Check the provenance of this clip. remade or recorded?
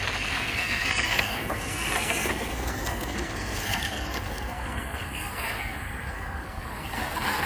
remade